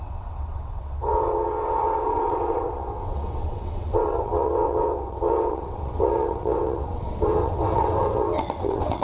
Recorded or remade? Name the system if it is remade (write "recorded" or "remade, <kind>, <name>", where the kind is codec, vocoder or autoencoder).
remade, vocoder, WaveNeXt